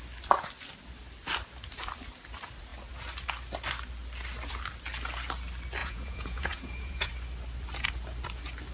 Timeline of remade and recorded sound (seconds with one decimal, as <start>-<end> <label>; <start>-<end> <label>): 0.0-5.8 recorded; 5.8-7.1 remade; 7.1-8.7 recorded